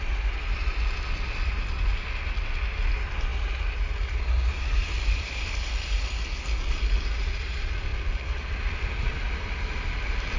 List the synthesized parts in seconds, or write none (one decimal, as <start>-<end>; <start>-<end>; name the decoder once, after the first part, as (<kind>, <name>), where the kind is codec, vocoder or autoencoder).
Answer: none